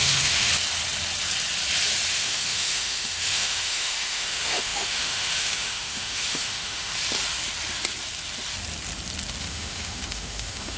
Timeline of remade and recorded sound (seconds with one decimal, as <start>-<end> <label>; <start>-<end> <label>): 0.0-0.5 remade; 0.5-2.1 recorded; 2.1-6.9 remade; 6.9-9.4 recorded; 9.4-10.8 remade